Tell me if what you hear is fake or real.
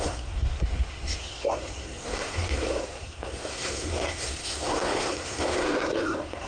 fake